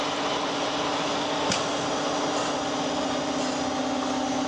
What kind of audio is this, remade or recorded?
recorded